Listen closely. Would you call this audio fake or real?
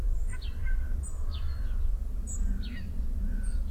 fake